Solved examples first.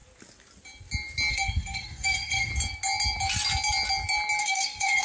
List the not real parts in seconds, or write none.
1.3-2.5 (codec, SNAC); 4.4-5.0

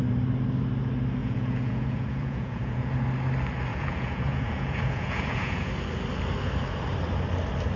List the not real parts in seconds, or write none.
1.2-2.9 (vocoder, Vocos); 3.7-5.7

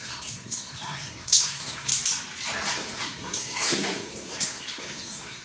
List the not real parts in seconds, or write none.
0.0-1.9 (codec, SNAC); 2.7-5.4

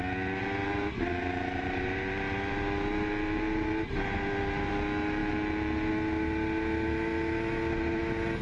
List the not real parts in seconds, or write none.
0.4-4.7 (vocoder, BigVGAN v2)

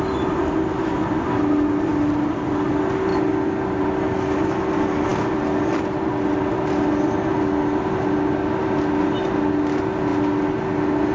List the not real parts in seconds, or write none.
none